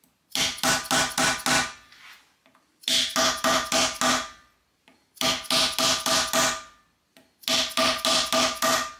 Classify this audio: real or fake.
real